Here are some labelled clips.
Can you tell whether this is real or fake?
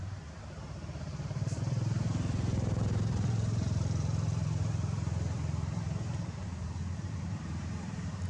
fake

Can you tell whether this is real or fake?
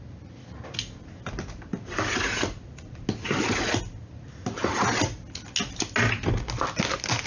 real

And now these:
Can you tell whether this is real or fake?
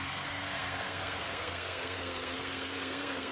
fake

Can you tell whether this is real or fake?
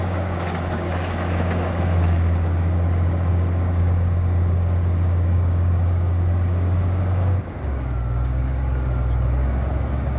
fake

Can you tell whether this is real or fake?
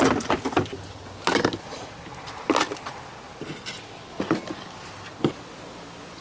real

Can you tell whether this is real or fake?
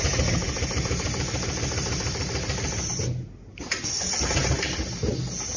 real